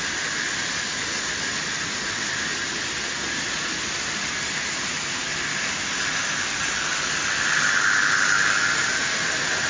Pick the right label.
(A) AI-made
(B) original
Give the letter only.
B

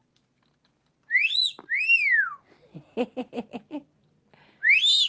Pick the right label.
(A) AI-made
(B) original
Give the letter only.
B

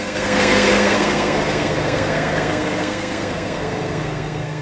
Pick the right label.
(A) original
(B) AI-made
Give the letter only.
B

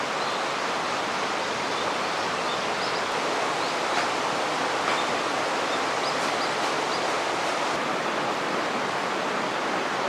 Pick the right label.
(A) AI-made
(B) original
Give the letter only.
B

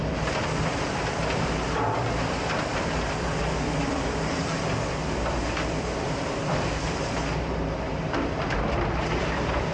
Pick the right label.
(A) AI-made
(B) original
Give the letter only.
A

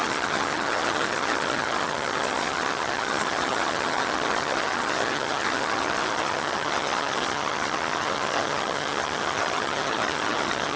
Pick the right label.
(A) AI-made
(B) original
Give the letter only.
A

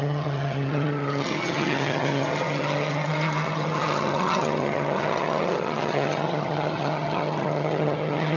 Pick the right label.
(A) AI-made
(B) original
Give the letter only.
A